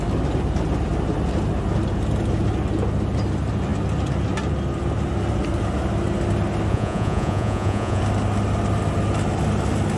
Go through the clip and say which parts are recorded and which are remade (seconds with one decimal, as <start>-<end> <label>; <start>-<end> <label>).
0.0-6.7 recorded; 6.7-8.0 remade; 8.0-10.0 recorded